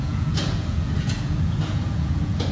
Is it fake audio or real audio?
fake